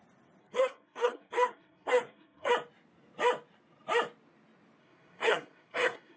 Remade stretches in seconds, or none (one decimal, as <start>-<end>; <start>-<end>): 0.4-2.5; 4.8-6.2

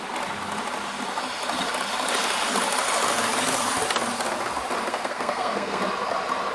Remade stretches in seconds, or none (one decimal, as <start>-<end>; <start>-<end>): 4.9-5.8